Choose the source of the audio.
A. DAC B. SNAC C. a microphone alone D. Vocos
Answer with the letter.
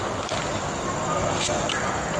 C